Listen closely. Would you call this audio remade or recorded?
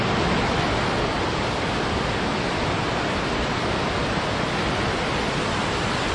recorded